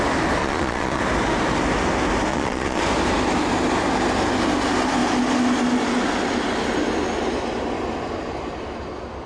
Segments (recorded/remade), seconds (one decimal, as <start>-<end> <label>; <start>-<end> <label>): 0.0-0.4 recorded; 0.4-1.0 remade; 1.0-2.3 recorded; 2.3-2.8 remade; 2.8-9.3 recorded